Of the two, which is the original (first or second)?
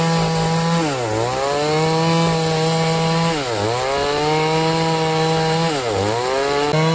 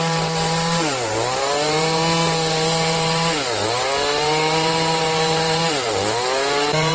first